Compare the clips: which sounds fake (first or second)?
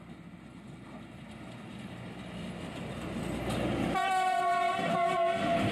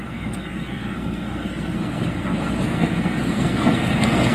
second